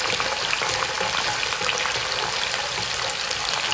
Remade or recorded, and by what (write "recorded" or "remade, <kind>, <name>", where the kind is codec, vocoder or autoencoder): recorded